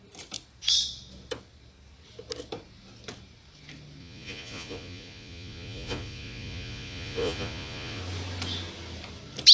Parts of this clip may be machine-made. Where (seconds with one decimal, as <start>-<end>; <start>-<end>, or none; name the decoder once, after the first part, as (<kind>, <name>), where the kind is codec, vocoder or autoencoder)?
4.0-8.0 (vocoder, Vocos)